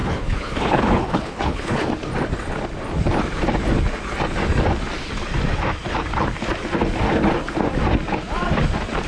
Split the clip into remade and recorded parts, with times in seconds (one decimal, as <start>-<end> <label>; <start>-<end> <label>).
0.0-1.9 remade; 1.9-9.1 recorded